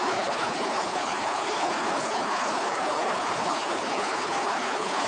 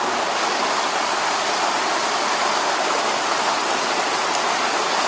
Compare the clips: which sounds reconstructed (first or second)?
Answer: first